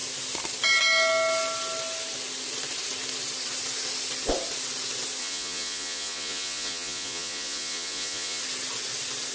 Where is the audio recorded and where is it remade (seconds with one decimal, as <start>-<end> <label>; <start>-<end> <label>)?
0.0-5.2 recorded; 5.2-8.4 remade; 8.4-9.3 recorded